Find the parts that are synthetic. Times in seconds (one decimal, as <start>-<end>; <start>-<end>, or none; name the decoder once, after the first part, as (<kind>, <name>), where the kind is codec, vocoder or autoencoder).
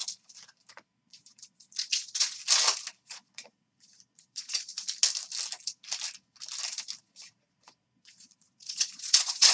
0.7-2.4 (vocoder, Vocos); 3.1-4.7; 7.0-9.5